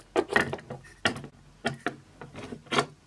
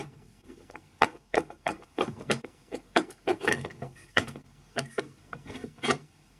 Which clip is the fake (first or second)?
second